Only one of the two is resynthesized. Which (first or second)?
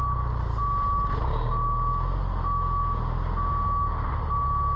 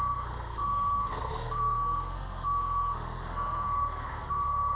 second